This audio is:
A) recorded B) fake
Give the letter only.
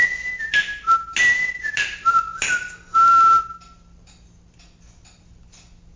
A